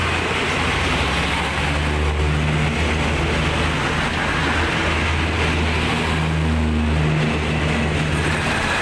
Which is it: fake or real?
real